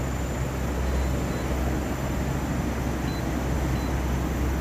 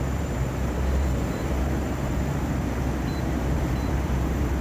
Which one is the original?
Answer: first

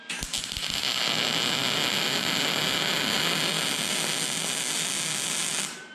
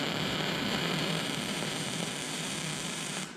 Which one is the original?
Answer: first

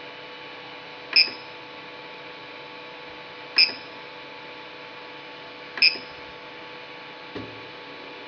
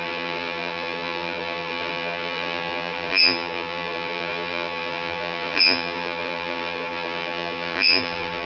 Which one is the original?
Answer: first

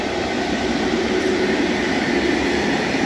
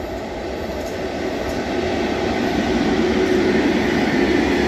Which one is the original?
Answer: second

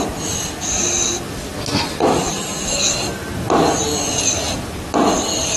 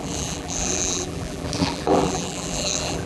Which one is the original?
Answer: first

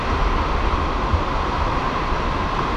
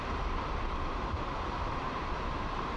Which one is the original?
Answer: first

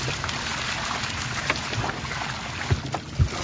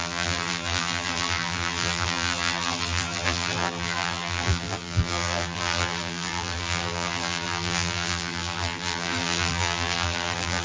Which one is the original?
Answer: first